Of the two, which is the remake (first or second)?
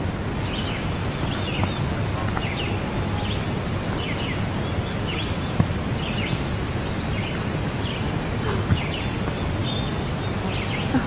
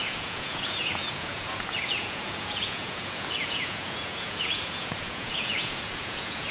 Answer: second